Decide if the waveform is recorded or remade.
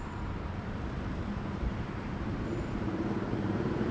remade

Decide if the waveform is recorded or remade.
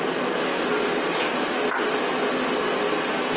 recorded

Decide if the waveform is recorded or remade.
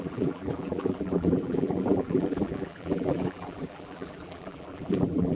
remade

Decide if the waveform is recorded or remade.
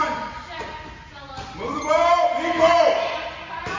recorded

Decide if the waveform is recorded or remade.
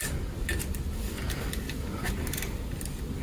recorded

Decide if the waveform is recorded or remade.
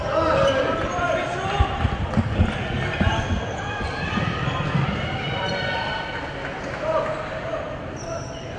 remade